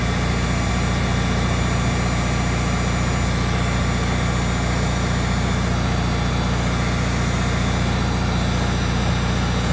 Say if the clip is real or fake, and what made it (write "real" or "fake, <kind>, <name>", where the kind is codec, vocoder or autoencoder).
real